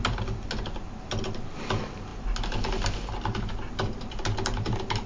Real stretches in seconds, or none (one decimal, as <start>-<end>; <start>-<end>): 0.0-5.1